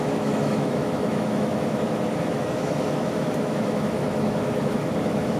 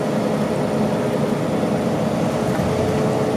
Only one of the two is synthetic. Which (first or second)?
first